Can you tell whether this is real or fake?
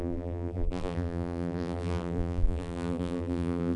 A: fake